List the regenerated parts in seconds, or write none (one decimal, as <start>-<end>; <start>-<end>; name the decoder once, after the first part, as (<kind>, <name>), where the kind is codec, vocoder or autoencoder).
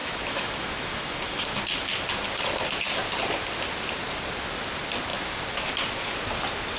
0.0-1.6 (autoencoder, DAC-VAE)